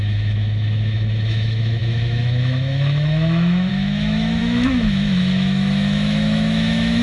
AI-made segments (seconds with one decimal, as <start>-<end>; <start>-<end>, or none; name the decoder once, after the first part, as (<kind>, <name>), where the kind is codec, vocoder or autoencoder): 0.0-7.0 (autoencoder, DAC-VAE)